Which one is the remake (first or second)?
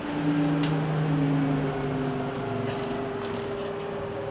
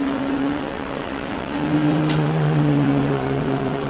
second